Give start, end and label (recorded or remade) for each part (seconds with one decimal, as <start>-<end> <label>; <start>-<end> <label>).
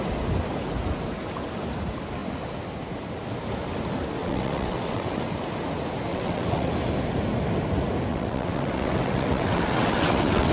0.0-4.2 recorded; 4.2-5.2 remade; 5.2-6.1 recorded; 6.1-6.7 remade; 6.7-8.1 recorded; 8.1-10.5 remade